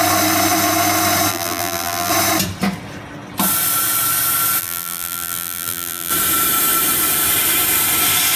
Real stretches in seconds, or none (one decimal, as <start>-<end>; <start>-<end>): 0.0-1.3; 2.1-4.6; 6.1-8.4